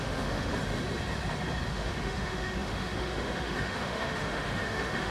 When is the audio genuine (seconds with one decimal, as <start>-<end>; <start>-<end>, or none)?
0.5-1.7